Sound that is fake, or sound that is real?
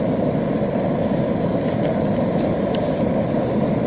real